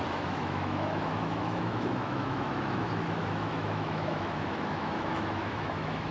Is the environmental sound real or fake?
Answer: fake